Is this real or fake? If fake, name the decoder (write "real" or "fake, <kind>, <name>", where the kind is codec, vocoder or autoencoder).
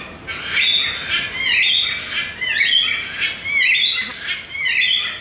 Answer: real